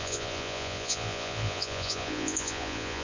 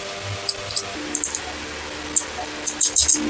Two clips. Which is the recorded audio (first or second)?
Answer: second